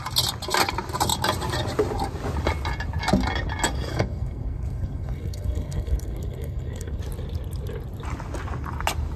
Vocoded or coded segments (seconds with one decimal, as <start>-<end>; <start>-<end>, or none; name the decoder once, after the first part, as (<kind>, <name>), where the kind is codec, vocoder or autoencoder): 3.9-7.0 (codec, SNAC)